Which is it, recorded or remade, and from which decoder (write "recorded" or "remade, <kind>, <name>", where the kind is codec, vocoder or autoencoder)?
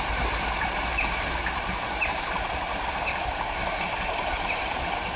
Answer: remade, vocoder, BigVGAN v2